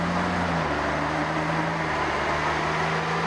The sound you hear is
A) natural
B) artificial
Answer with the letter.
A